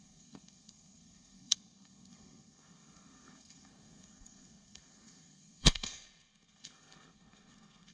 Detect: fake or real fake